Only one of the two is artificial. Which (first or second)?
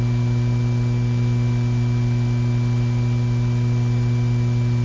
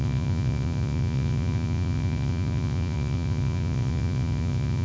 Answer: second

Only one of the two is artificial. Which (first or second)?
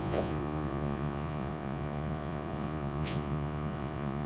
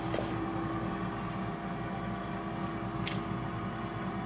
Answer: first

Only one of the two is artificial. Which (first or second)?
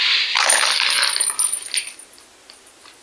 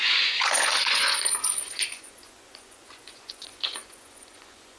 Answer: second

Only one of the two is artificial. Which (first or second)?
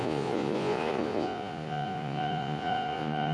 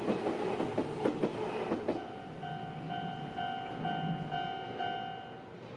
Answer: first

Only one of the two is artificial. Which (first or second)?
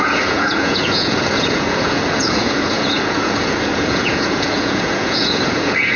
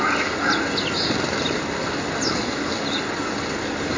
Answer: first